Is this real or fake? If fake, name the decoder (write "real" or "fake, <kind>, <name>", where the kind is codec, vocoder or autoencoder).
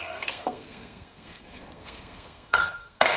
fake, codec, SNAC